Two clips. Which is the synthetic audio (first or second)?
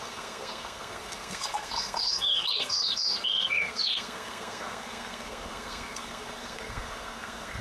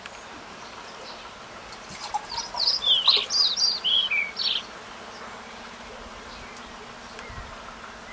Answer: first